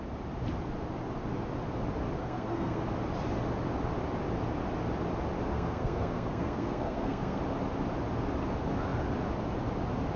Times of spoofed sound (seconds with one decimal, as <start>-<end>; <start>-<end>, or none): 2.2-2.8; 5.5-7.4